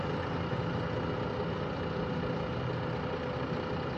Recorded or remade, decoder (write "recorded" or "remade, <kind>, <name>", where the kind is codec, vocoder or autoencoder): recorded